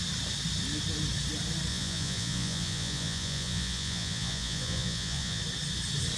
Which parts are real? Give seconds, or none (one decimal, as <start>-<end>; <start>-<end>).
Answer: 0.0-1.7; 5.4-6.2